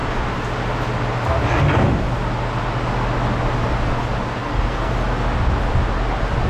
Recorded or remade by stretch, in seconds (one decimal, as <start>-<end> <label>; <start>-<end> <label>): 0.0-4.4 recorded; 4.4-4.9 remade; 4.9-6.5 recorded